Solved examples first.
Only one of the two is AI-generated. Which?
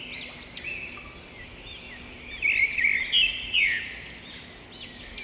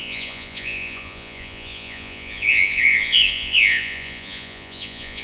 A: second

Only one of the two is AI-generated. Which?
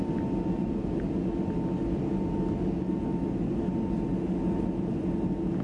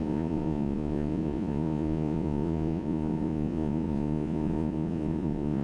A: second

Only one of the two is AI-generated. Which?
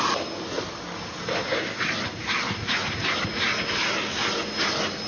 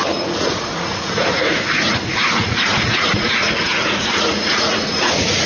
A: second